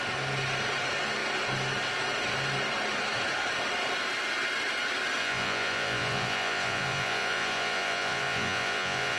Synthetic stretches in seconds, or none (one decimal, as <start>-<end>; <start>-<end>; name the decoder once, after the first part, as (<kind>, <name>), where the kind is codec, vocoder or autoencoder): 5.2-9.2 (vocoder, Vocos)

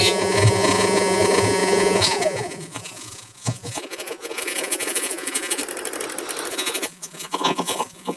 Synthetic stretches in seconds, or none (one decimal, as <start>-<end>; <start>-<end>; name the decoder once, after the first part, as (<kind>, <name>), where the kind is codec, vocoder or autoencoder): 0.0-5.6 (vocoder, Vocos); 6.5-8.2